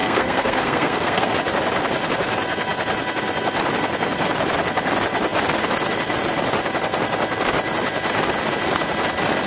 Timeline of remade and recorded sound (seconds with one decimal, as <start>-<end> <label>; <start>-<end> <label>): 0.0-1.3 remade; 1.3-9.5 recorded